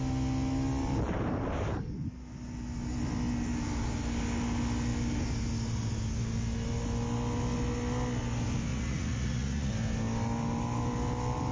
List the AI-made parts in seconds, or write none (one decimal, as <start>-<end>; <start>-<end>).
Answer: 8.7-9.7